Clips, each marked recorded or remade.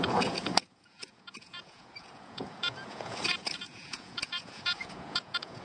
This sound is remade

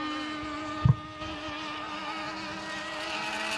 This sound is recorded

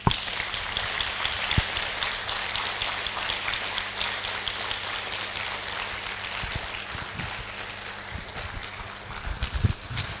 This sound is recorded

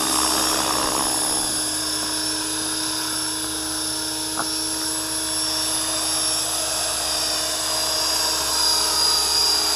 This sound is recorded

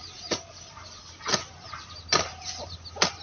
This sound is recorded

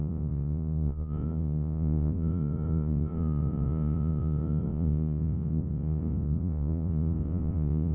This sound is remade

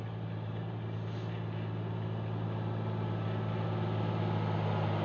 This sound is recorded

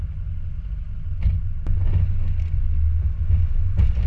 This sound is recorded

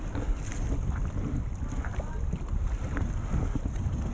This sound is recorded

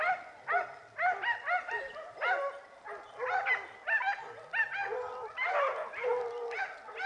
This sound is recorded